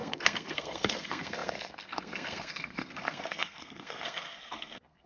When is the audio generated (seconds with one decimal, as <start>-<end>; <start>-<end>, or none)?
0.0-5.1